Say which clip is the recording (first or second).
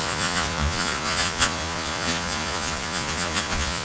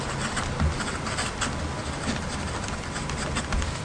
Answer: second